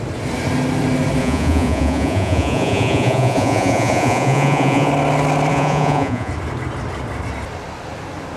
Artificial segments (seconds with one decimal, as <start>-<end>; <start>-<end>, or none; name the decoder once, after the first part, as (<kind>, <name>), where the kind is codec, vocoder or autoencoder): 1.2-4.9 (vocoder, Vocos); 5.5-6.3